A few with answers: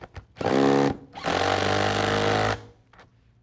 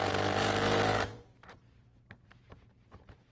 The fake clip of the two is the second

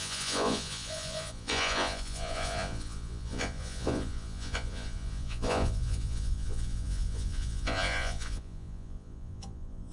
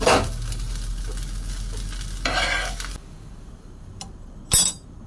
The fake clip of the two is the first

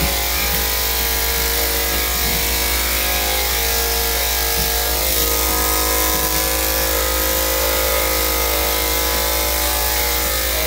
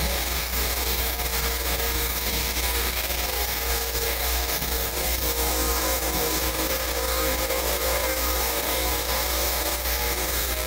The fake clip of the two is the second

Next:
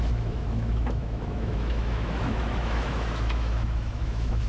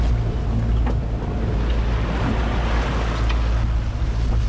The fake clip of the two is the first